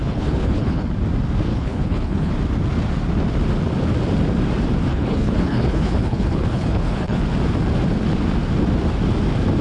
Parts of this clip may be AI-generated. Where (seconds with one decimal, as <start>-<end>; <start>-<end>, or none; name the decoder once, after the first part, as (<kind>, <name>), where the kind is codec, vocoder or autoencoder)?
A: 0.0-0.9 (codec, HILCodec); 1.5-2.3; 4.9-7.2